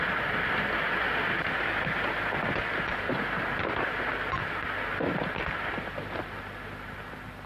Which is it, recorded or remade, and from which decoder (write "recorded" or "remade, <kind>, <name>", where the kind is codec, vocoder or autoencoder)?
recorded